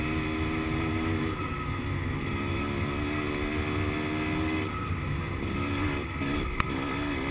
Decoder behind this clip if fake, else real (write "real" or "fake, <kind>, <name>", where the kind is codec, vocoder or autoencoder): real